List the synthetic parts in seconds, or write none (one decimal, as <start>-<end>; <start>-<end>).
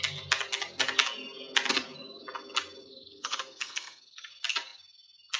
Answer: 2.8-4.3